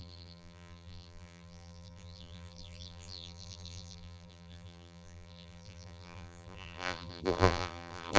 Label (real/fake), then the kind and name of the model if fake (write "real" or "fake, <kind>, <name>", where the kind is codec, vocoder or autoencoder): fake, vocoder, BigVGAN v2